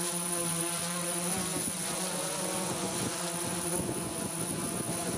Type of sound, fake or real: fake